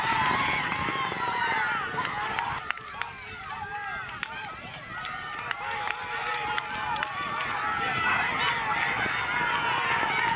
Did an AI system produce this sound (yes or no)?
no